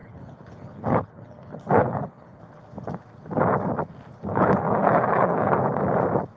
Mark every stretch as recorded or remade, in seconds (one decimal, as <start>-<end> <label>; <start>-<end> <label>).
0.0-2.4 remade; 2.4-4.3 recorded; 4.3-5.5 remade; 5.5-6.4 recorded